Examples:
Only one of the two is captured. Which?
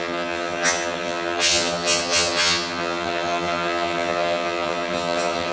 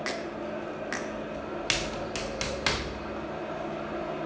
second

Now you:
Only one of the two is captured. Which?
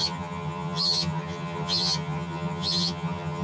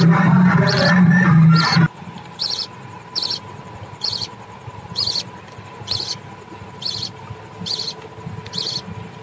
second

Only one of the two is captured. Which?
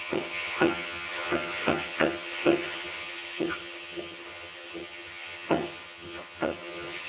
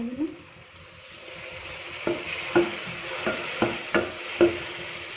second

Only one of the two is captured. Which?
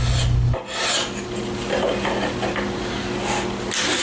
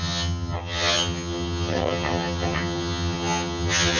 first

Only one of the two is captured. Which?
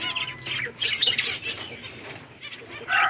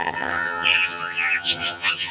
first